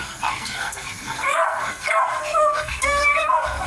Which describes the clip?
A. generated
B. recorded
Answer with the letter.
A